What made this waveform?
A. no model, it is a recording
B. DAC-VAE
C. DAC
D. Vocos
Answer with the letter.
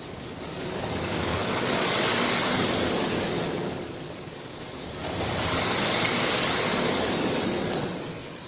C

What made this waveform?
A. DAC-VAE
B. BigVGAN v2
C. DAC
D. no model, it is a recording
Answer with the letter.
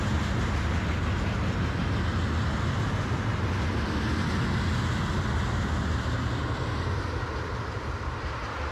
D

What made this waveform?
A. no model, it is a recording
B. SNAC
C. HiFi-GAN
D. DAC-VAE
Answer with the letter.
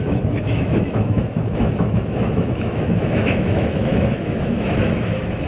D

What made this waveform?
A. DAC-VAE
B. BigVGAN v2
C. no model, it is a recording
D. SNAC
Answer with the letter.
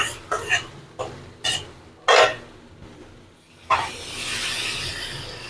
C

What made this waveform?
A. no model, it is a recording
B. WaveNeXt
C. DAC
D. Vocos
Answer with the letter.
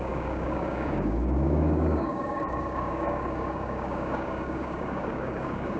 C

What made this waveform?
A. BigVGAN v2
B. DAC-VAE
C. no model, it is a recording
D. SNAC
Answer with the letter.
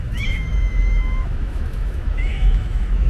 B